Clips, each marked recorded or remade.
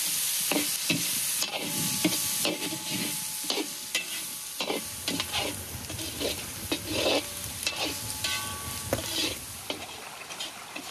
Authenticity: recorded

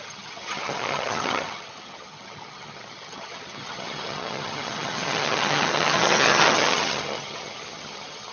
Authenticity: remade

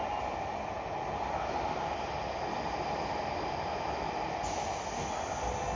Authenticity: recorded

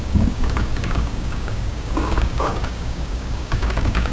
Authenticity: remade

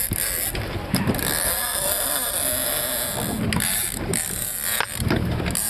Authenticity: recorded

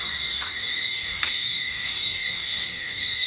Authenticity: remade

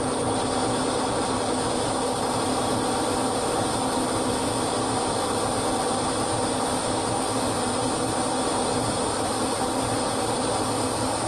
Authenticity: recorded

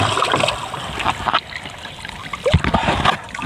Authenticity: recorded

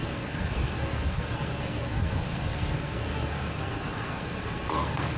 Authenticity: remade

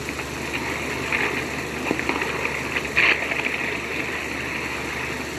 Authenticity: recorded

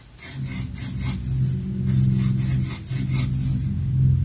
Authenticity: recorded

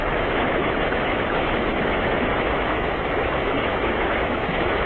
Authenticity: remade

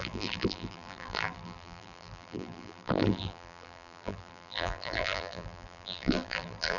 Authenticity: remade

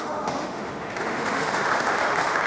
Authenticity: remade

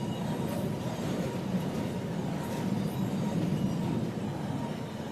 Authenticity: recorded